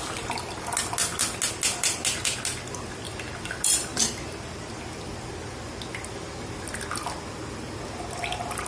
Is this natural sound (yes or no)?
yes